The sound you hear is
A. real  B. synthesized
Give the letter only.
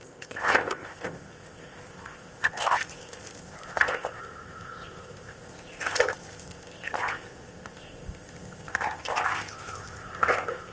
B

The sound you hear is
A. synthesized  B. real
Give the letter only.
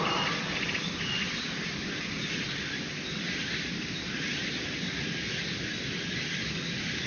B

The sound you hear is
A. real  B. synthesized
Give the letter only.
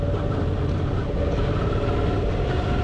A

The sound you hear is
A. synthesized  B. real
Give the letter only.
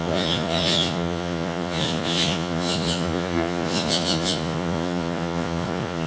A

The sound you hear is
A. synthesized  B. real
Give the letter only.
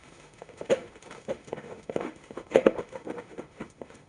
A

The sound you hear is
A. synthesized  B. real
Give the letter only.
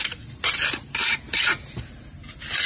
B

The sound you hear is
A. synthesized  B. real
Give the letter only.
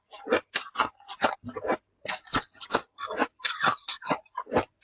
B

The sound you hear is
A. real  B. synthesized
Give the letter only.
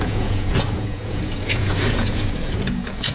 B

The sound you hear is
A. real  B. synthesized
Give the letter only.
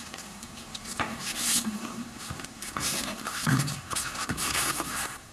B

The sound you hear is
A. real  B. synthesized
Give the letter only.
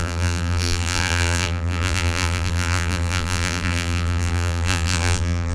B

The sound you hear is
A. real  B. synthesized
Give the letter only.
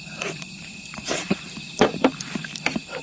B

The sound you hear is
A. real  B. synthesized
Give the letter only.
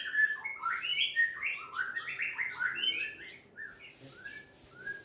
A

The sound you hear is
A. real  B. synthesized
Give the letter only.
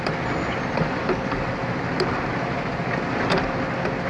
A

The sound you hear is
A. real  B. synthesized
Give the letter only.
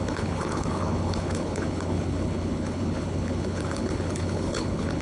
B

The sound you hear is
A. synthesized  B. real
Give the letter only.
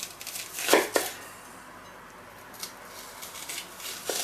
B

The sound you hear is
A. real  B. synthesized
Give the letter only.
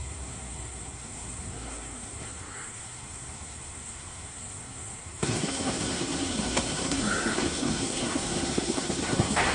B